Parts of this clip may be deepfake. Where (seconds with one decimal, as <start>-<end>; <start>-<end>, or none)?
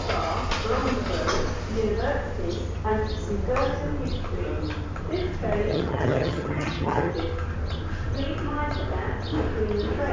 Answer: 5.7-7.1